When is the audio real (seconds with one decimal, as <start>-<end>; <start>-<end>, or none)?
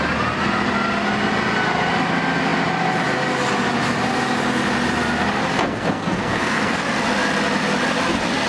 0.0-5.6; 6.8-8.5